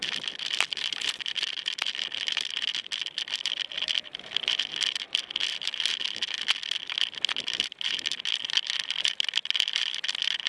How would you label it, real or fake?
fake